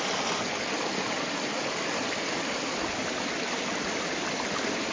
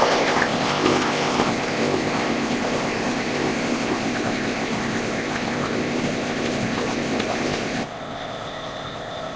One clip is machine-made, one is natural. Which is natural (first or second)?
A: first